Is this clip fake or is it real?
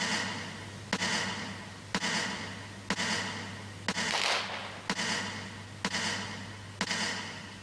real